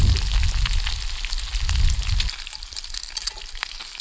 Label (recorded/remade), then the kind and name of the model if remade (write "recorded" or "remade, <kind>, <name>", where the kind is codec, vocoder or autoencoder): recorded